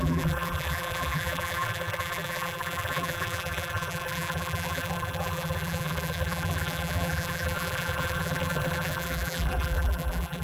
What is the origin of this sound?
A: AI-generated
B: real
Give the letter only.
A